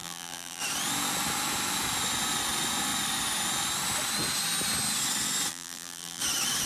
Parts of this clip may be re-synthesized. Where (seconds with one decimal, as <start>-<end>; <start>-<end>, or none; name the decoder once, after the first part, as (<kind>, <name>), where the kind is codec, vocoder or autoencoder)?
0.0-0.6 (vocoder, BigVGAN v2); 5.5-6.2